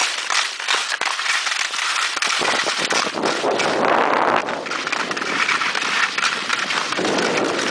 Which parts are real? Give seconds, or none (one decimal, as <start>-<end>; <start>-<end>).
2.5-4.4; 5.9-7.7